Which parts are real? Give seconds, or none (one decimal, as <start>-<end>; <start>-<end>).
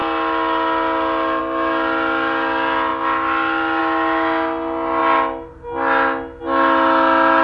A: 0.0-7.4